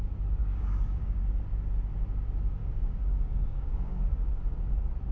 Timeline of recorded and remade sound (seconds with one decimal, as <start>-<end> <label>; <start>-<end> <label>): 0.0-0.4 recorded; 0.4-1.2 remade; 1.2-2.6 recorded; 2.6-4.3 remade; 4.3-5.1 recorded